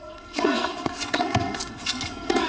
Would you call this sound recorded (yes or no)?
no